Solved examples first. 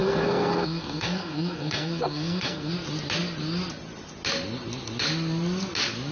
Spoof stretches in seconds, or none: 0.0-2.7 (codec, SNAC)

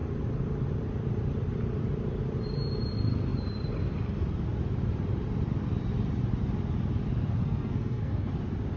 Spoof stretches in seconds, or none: 7.4-8.3 (codec, SNAC)

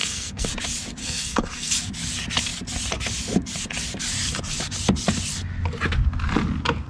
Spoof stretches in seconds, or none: 0.0-0.5 (codec, SNAC); 1.0-1.7

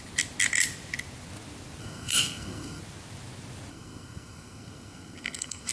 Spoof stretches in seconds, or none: 1.8-2.8 (codec, SNAC); 3.7-5.7

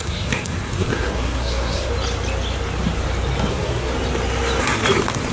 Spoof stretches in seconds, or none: 0.0-1.9 (codec, SNAC); 3.5-3.9